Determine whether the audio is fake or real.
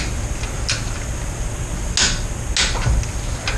real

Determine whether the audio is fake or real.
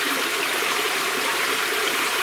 fake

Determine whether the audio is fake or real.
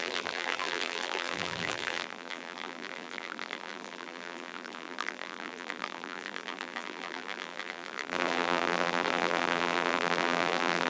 fake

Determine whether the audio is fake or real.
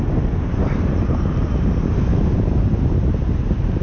fake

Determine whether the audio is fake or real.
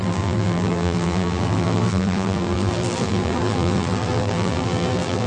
fake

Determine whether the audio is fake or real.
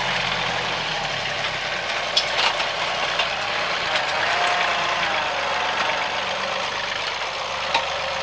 real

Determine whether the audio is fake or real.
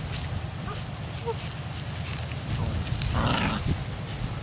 real